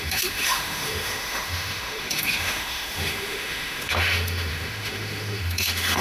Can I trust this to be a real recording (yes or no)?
no